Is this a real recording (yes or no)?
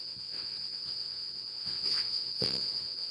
no